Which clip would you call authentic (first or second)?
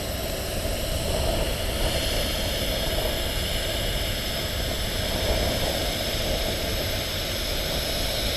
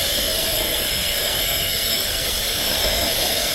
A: first